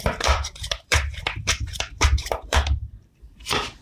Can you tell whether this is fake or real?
fake